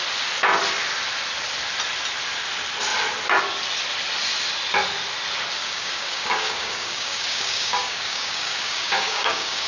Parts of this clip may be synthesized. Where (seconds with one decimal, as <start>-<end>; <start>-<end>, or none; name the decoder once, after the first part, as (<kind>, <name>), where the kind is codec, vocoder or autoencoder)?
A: 5.6-9.7 (codec, DAC)

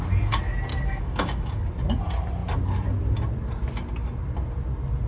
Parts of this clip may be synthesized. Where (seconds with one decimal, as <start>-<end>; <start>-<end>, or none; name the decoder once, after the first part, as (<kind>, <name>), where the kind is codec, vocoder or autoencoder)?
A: 0.7-1.7 (codec, DAC)

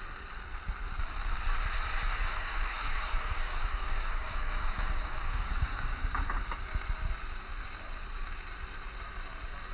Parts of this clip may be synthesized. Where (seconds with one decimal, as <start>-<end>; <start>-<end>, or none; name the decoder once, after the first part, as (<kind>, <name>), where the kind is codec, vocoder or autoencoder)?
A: 2.3-6.4 (codec, DAC)

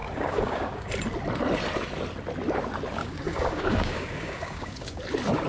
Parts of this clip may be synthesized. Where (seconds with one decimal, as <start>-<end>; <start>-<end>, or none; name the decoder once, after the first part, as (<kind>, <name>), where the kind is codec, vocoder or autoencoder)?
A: 0.0-0.9 (codec, DAC); 3.0-5.0

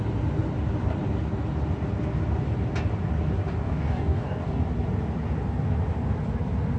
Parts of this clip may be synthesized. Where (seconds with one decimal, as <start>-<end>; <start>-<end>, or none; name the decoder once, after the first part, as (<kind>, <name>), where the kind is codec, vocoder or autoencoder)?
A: 3.7-4.6 (codec, DAC)

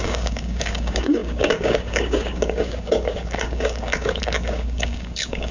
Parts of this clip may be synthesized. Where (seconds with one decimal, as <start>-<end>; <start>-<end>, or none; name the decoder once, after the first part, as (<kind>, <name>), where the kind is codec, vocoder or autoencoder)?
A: 0.0-5.5 (codec, DAC)